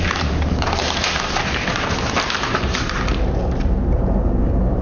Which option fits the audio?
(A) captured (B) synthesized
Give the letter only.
B